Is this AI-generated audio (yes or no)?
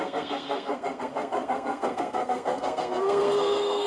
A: yes